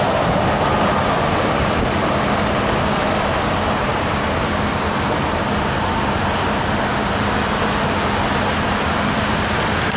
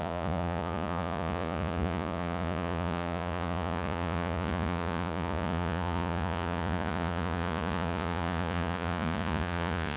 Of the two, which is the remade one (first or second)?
second